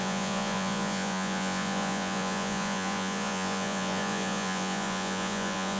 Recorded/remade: remade